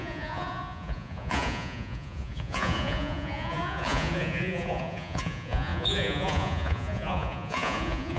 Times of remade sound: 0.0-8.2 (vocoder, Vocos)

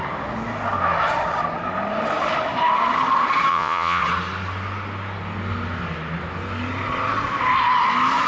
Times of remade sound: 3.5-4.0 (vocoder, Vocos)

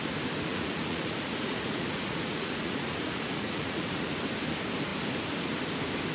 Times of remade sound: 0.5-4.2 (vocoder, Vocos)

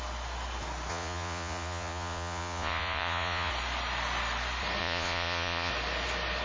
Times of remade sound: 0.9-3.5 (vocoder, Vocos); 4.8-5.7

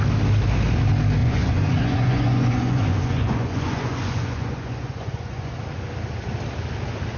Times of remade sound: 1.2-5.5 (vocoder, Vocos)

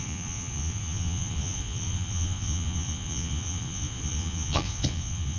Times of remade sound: 0.0-5.4 (vocoder, Vocos)